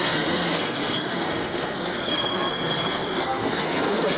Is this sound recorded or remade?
remade